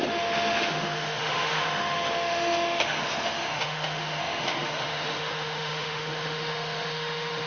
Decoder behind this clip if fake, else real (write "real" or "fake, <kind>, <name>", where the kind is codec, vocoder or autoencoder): fake, autoencoder, DAC-VAE